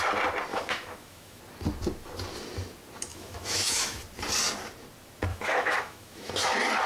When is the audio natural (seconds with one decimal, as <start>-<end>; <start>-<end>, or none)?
0.0-0.5; 1.4-3.1; 4.0-5.3; 6.3-6.9